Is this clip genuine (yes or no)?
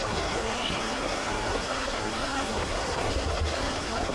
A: no